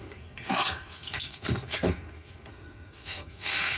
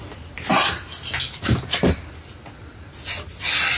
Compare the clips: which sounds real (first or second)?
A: second